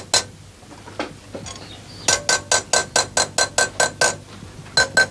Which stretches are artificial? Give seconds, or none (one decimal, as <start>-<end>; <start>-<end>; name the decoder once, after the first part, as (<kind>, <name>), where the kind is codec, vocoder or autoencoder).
none